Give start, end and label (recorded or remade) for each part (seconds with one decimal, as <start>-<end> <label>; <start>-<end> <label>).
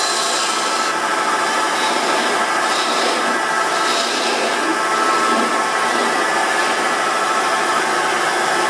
0.0-1.1 recorded; 1.1-3.3 remade; 3.3-6.4 recorded; 6.4-7.8 remade; 7.8-8.7 recorded